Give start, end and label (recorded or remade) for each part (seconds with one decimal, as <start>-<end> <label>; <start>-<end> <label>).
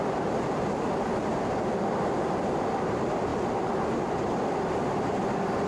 0.0-5.7 remade